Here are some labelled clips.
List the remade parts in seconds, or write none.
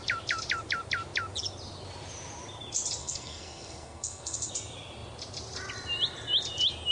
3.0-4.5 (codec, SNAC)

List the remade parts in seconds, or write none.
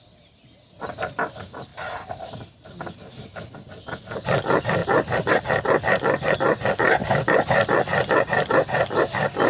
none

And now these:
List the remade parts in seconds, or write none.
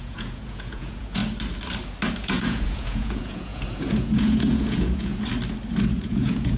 0.0-1.2 (vocoder, Vocos); 2.1-5.1; 5.8-6.6